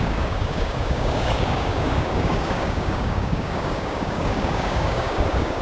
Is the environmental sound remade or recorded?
remade